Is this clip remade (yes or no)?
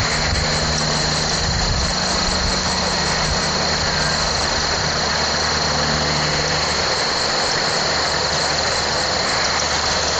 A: no